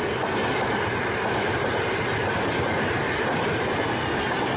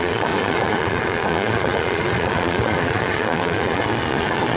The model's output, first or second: second